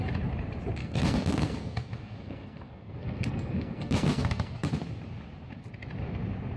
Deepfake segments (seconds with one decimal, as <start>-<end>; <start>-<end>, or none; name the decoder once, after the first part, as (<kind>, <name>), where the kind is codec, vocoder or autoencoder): 0.8-4.7 (codec, SNAC)